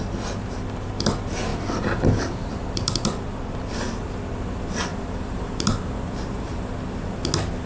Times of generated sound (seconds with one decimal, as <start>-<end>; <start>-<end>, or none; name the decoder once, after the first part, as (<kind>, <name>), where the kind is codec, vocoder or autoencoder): 1.5-4.1 (vocoder, BigVGAN v2); 4.9-5.5